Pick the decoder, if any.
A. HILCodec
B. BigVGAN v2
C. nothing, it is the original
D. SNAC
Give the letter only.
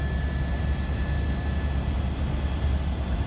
C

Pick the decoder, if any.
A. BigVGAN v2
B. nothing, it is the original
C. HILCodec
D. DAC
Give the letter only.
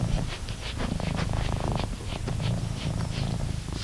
B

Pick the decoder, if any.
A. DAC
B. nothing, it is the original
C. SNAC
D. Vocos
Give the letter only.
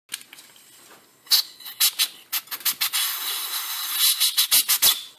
B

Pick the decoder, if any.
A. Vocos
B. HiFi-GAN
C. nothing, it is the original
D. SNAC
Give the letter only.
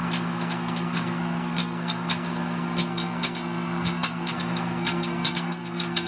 D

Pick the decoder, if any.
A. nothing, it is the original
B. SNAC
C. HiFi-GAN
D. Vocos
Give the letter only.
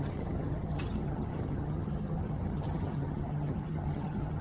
C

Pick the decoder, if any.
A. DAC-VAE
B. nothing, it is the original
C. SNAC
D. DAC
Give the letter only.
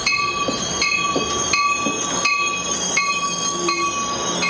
B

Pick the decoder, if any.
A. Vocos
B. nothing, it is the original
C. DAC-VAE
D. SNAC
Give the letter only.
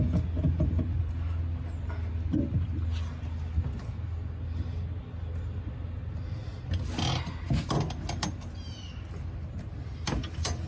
B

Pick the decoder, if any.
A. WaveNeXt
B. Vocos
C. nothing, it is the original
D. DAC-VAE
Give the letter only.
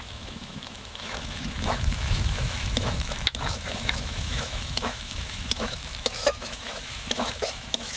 D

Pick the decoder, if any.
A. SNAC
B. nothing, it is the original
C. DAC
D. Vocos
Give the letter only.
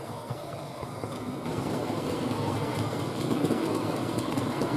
A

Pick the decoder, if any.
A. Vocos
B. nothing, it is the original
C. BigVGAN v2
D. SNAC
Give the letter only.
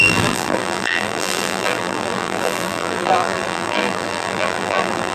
C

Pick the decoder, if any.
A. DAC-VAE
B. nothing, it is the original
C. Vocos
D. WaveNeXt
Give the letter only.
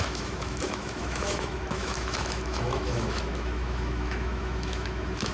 A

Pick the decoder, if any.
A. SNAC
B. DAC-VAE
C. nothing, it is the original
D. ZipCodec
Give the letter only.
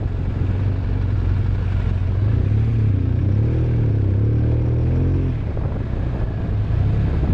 C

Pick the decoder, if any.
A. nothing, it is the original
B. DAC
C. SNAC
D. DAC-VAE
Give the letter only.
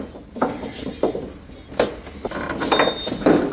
A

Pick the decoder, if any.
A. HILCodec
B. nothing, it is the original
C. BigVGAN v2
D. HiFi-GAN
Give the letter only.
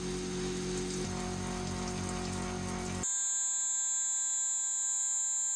B